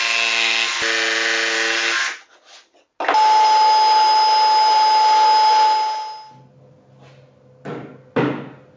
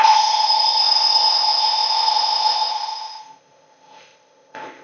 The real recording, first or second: first